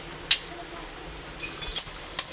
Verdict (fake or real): real